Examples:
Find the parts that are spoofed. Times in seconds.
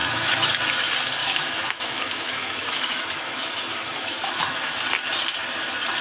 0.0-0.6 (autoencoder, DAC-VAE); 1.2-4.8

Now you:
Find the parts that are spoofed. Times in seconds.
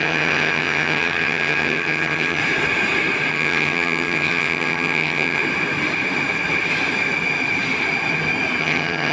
0.0-2.4 (vocoder, HiFi-GAN); 3.3-5.4; 8.6-9.1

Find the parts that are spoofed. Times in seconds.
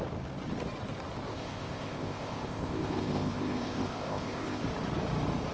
1.3-4.6 (codec, ZipCodec)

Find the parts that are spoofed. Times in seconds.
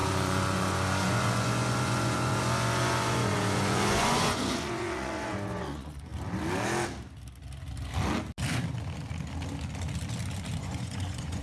0.0-6.1 (vocoder, Vocos); 10.6-11.4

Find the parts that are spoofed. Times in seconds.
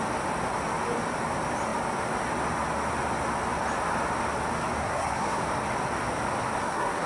4.8-5.4 (codec, SNAC); 6.6-7.1